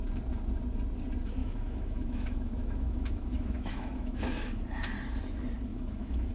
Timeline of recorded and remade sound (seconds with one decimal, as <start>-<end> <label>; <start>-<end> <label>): 0.0-1.4 recorded; 1.4-4.6 remade; 4.6-5.7 recorded; 5.7-6.3 remade